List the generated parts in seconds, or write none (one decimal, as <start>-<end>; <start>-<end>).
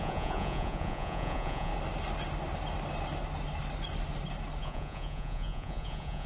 0.0-1.7; 4.6-6.3